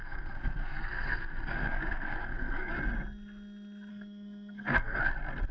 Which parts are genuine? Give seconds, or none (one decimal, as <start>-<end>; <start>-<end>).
2.7-3.9; 5.0-5.5